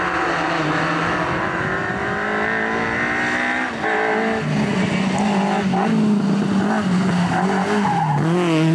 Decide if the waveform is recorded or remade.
recorded